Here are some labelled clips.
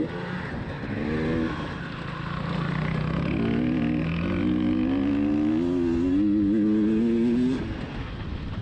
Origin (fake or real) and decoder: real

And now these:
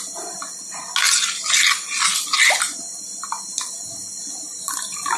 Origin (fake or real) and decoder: real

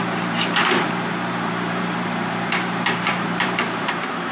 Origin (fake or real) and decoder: fake, vocoder, BigVGAN v2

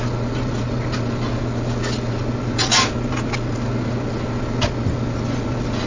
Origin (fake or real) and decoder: real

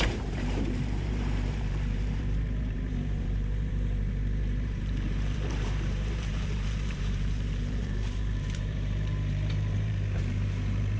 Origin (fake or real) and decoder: fake, vocoder, BigVGAN v2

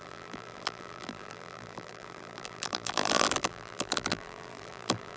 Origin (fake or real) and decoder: fake, vocoder, BigVGAN v2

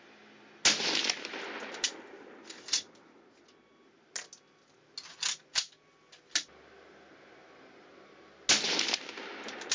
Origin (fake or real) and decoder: real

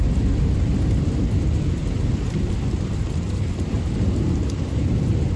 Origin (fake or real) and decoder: fake, vocoder, BigVGAN v2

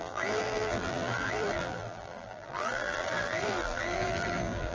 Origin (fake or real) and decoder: fake, vocoder, BigVGAN v2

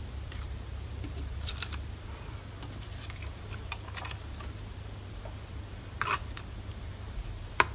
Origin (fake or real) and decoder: fake, vocoder, BigVGAN v2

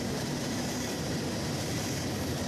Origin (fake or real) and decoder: fake, vocoder, BigVGAN v2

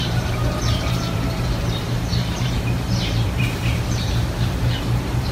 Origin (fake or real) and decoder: fake, vocoder, BigVGAN v2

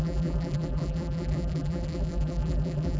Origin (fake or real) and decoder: fake, vocoder, BigVGAN v2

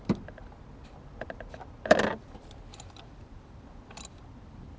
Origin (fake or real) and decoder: fake, vocoder, BigVGAN v2